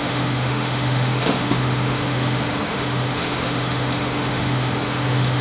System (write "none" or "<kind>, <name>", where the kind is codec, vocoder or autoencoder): autoencoder, DAC-VAE